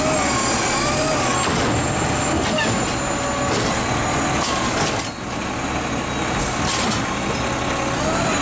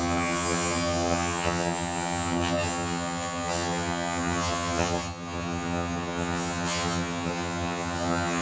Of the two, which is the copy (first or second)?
second